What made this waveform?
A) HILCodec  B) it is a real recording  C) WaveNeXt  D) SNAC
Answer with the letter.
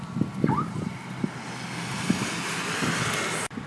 B